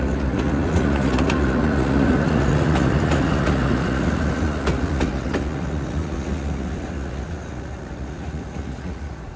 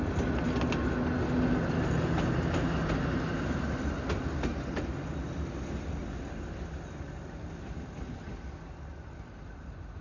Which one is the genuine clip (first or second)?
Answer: second